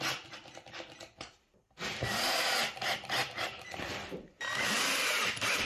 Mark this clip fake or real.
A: fake